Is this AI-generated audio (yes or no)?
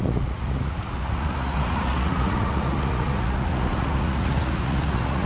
yes